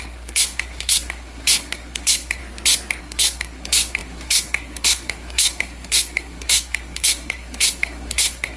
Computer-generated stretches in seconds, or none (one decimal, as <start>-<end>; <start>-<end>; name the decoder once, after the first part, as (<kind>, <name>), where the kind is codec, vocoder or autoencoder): 0.0-2.4 (codec, SNAC); 3.0-8.6